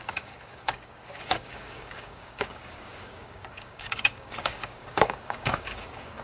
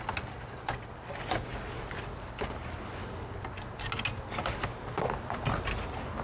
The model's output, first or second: first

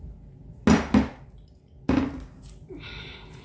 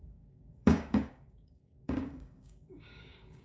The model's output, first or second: second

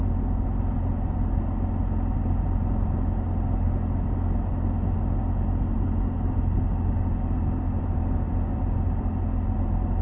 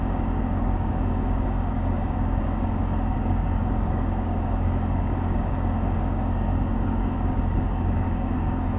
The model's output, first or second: second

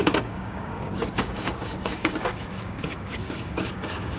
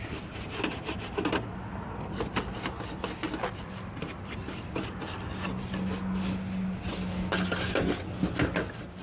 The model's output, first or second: first